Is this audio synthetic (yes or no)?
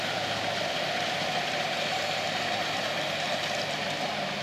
no